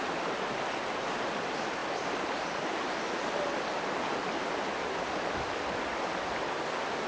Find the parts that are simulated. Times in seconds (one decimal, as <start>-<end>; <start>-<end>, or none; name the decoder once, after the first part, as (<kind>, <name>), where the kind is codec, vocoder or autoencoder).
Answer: none